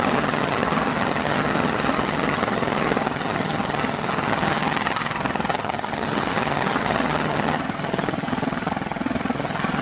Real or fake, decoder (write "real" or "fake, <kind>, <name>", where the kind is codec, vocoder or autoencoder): fake, vocoder, HiFi-GAN